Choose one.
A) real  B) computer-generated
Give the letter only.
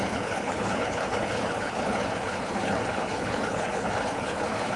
B